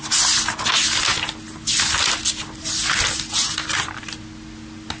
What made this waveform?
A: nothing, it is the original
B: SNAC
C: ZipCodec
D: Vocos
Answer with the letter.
A